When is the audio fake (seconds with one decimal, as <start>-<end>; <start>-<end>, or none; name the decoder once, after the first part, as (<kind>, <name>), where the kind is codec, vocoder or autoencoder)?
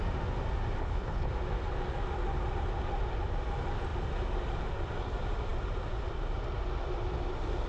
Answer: 0.8-1.3 (codec, HILCodec)